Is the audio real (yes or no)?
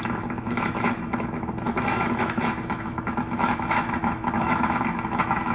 no